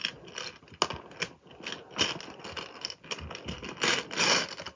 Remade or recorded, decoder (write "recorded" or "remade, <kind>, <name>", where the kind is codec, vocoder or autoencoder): recorded